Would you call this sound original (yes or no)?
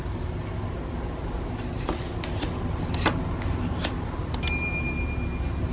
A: yes